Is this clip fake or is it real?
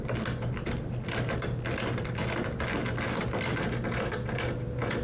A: real